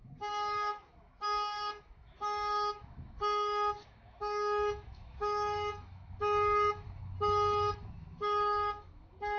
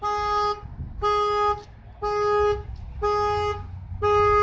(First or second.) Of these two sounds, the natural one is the second